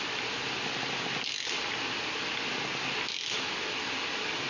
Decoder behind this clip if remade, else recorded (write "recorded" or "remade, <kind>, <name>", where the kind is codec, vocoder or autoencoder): recorded